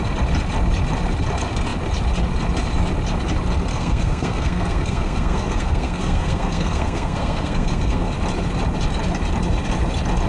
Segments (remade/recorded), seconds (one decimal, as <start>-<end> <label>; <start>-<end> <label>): 0.0-3.7 recorded; 3.7-8.1 remade; 8.1-10.3 recorded